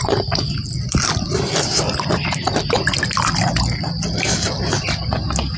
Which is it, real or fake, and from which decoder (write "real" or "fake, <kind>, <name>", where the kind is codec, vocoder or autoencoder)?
fake, vocoder, BigVGAN v2